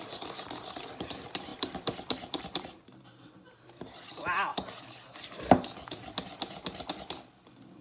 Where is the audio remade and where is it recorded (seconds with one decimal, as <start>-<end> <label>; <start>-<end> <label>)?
0.0-4.5 remade; 4.5-7.0 recorded; 7.0-7.8 remade